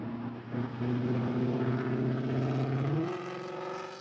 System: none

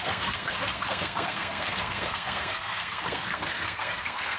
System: codec, SNAC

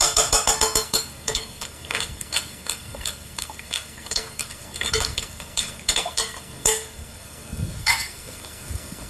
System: codec, SNAC